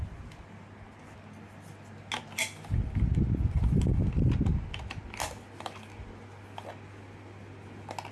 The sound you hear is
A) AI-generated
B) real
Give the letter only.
B